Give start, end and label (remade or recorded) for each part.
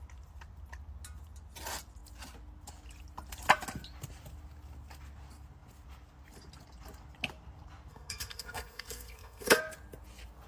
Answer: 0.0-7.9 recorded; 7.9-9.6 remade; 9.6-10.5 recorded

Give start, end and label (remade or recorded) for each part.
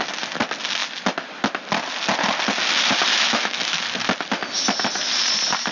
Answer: 0.0-3.1 recorded; 3.1-3.8 remade; 3.8-5.7 recorded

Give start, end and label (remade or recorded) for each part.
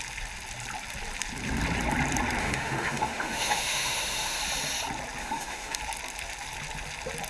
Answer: 0.0-2.4 recorded; 2.4-4.4 remade; 4.4-5.2 recorded; 5.2-5.8 remade; 5.8-7.3 recorded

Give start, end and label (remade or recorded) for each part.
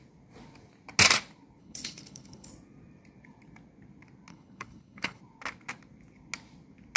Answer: 0.0-1.6 recorded; 1.6-2.5 remade; 2.5-4.3 recorded; 4.3-5.2 remade; 5.2-7.0 recorded